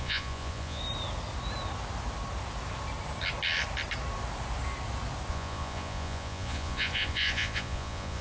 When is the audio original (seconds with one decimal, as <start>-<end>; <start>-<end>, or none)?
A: 0.8-5.3